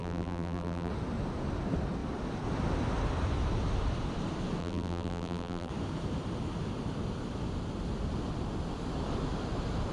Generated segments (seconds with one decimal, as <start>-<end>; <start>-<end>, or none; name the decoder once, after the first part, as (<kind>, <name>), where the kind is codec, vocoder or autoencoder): 0.0-0.9 (vocoder, BigVGAN v2); 4.6-5.7